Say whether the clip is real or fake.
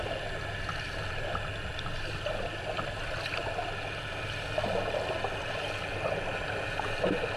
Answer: real